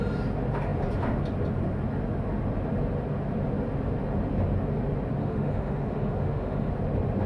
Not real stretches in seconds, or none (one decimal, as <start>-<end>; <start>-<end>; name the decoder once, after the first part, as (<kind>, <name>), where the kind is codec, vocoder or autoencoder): 5.2-6.7 (autoencoder, DAC-VAE)